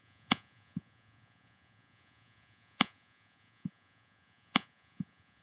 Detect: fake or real fake